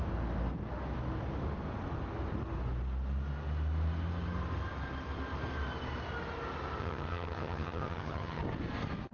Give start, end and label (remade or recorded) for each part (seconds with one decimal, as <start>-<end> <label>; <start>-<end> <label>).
0.0-6.8 recorded; 6.8-8.4 remade; 8.4-9.1 recorded